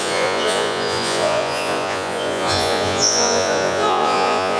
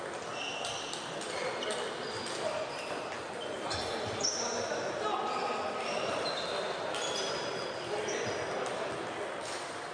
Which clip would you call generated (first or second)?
first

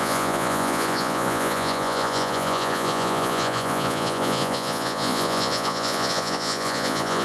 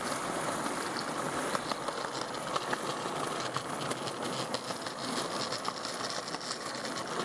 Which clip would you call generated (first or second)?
first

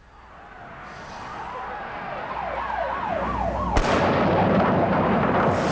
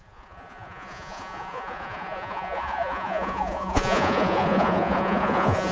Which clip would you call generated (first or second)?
second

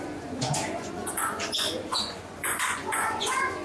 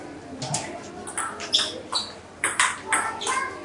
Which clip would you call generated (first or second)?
first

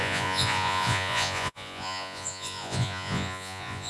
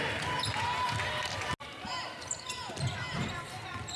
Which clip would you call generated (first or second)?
first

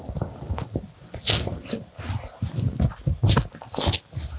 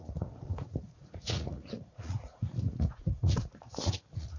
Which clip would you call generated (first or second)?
second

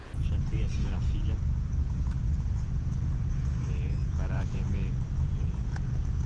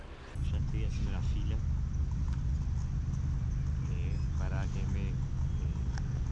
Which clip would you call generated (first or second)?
first